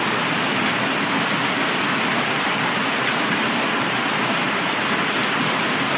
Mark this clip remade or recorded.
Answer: recorded